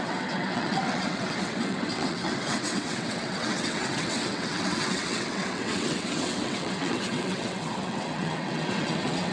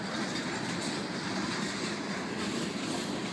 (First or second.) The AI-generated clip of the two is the first